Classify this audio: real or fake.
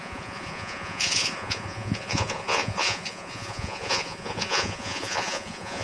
fake